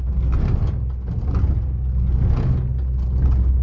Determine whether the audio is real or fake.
real